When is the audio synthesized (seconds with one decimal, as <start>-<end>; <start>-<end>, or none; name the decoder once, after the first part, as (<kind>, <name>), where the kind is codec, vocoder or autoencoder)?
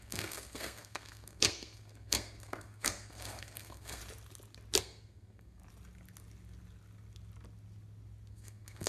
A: 0.0-4.0 (codec, SNAC); 4.8-5.6; 8.3-8.9